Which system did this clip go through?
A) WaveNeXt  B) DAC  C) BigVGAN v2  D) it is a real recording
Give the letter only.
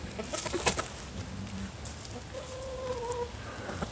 D